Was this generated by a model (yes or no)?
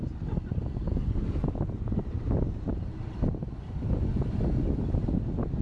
no